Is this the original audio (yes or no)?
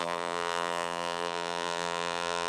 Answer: no